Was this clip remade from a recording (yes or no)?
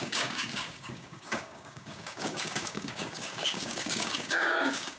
yes